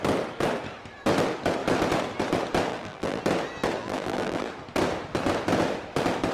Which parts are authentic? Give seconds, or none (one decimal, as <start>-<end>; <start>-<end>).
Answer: 0.0-2.7; 3.2-3.8; 4.5-6.3